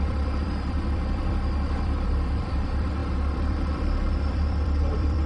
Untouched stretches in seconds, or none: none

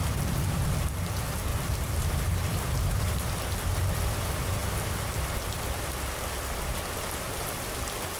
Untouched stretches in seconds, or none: 0.0-1.5; 3.3-8.2

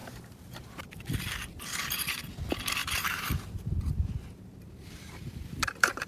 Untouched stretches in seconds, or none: 0.7-2.8

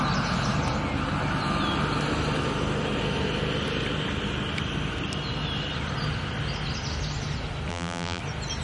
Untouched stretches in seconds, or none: 0.0-7.7; 8.2-8.6